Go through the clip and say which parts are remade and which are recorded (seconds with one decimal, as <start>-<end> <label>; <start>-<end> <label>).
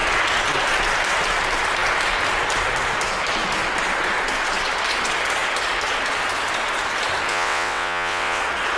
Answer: 0.0-7.3 recorded; 7.3-8.4 remade; 8.4-8.8 recorded